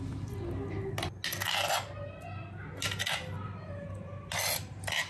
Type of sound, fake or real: real